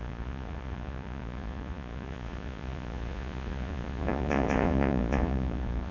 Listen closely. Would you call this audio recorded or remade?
remade